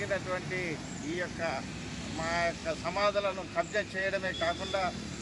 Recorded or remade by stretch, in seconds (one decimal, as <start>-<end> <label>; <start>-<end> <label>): 0.0-1.0 recorded; 1.0-1.9 remade; 1.9-2.6 recorded; 2.6-5.2 remade

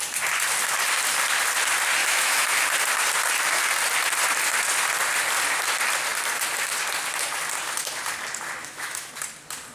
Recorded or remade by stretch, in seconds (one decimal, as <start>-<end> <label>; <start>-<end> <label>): 0.0-2.0 recorded; 2.0-2.6 remade; 2.6-8.6 recorded; 8.6-9.1 remade; 9.1-9.7 recorded

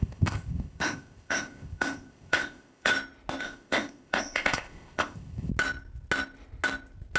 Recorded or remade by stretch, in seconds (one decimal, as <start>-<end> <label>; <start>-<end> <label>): 0.0-2.9 remade; 2.9-3.4 recorded; 3.4-5.5 remade; 5.5-7.2 recorded

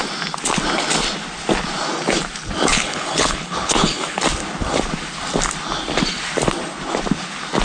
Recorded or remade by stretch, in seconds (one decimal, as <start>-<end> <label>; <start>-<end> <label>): 0.0-2.7 recorded; 2.7-4.2 remade; 4.2-7.6 recorded

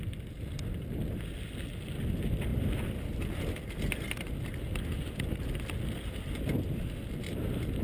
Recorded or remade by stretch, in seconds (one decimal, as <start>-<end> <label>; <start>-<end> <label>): 0.0-7.8 recorded